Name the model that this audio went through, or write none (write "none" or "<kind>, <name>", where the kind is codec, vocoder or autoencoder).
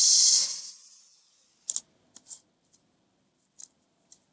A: none